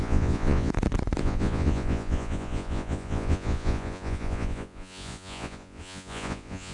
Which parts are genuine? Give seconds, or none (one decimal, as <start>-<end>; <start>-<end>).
0.7-1.2